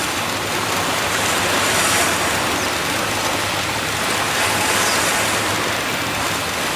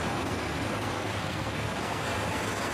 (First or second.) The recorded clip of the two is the first